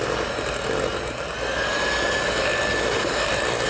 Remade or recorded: recorded